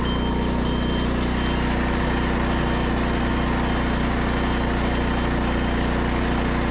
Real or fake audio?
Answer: real